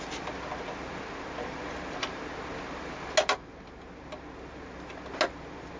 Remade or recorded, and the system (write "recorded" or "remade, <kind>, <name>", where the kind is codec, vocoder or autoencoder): recorded